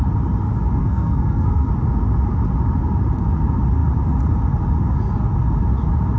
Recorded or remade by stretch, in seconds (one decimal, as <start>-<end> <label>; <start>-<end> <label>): 0.0-0.8 recorded; 0.8-1.7 remade; 1.7-6.2 recorded